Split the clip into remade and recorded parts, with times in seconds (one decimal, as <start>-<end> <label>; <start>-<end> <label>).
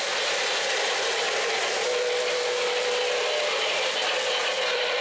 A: 0.0-5.0 recorded